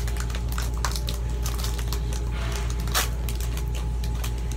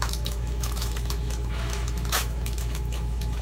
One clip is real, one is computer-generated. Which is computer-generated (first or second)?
second